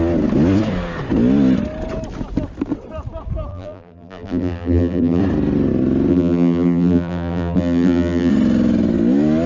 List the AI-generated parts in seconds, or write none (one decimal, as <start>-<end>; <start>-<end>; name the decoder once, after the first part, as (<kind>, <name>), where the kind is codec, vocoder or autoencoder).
3.5-5.2 (vocoder, BigVGAN v2); 6.1-8.3